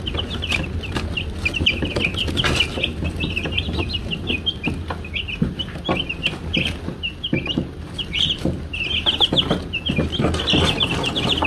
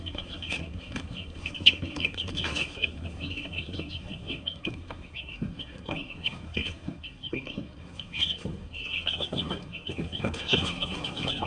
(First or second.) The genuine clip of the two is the first